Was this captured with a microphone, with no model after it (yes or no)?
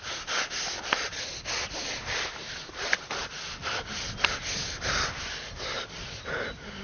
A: yes